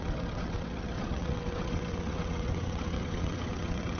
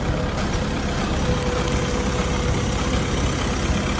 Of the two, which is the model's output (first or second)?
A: first